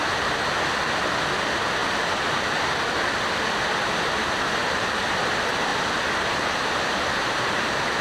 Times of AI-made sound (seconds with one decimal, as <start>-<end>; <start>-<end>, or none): 1.8-2.7; 4.6-5.2